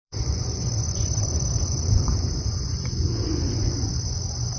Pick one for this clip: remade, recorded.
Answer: remade